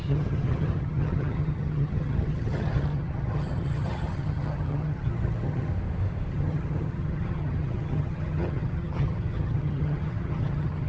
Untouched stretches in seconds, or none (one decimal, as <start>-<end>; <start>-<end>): 5.7-6.3